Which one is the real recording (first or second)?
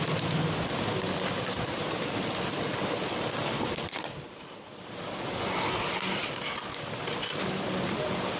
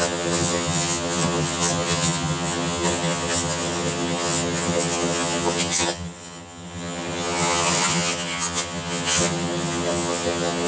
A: first